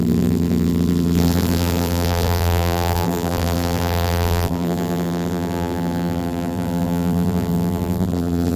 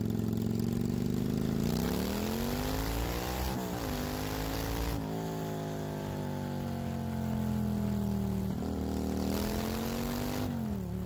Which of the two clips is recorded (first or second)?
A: second